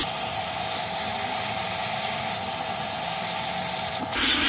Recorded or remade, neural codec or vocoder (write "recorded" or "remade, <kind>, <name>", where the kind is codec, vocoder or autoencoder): recorded